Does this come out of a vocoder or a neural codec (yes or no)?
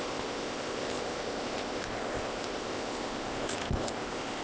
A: yes